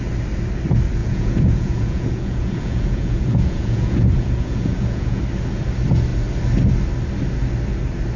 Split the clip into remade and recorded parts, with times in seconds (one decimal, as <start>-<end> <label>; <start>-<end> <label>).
0.0-1.0 recorded; 1.0-5.2 remade; 5.2-8.2 recorded